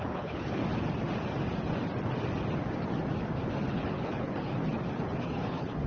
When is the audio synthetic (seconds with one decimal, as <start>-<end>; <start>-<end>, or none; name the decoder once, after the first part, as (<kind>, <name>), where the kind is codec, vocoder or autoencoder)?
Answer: 0.0-0.6 (codec, HILCodec); 3.6-4.5; 5.2-5.9